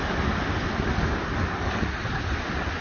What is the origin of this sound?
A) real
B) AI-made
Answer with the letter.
A